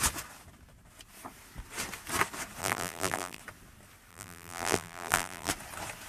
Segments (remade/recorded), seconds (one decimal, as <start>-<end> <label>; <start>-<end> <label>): 0.0-2.6 recorded; 2.6-3.4 remade; 3.4-4.1 recorded; 4.1-5.5 remade; 5.5-6.1 recorded